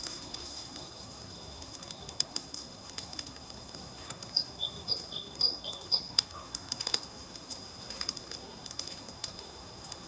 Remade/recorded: remade